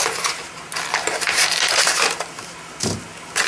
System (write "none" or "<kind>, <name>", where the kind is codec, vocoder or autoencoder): none